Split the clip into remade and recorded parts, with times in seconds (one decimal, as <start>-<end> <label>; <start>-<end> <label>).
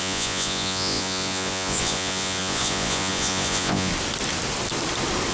0.0-3.9 remade; 3.9-5.3 recorded